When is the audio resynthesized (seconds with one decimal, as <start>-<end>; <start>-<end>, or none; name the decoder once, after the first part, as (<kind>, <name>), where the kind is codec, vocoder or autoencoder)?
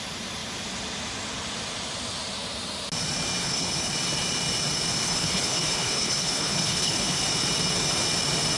3.4-3.9 (codec, HILCodec); 5.0-7.2